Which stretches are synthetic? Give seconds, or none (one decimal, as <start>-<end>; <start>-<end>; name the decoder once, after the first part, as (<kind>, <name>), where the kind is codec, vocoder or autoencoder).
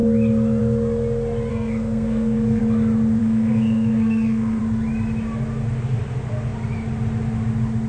1.5-2.6 (codec, SNAC); 3.2-4.6